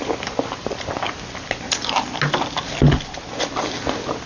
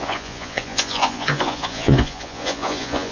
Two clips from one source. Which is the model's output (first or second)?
second